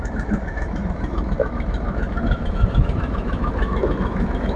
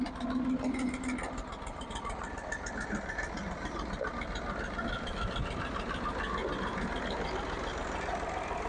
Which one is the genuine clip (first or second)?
second